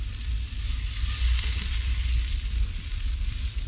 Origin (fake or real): real